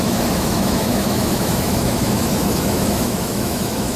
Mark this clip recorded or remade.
remade